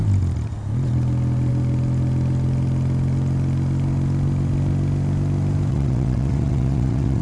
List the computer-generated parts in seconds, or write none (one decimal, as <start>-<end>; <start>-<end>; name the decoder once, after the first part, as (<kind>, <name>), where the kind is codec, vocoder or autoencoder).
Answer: 5.7-7.2 (vocoder, WaveNeXt)